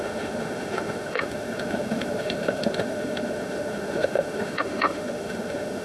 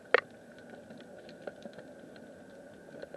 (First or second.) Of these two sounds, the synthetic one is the first